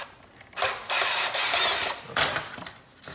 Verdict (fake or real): real